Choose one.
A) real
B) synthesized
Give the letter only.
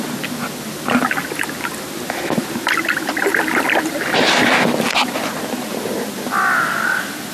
A